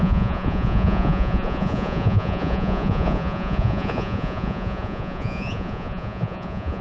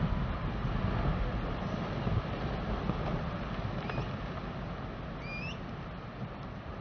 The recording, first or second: second